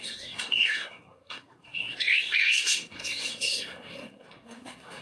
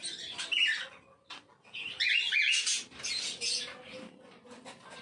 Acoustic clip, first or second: second